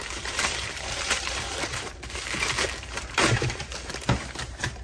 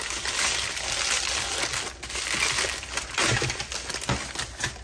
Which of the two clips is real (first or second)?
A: second